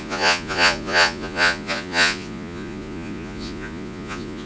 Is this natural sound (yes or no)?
no